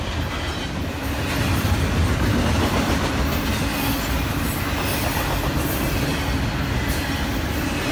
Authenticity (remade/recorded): recorded